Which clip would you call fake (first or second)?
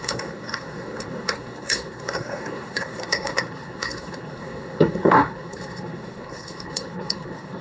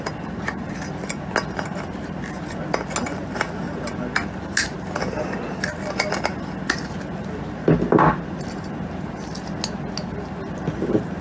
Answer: first